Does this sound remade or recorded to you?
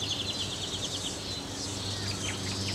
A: recorded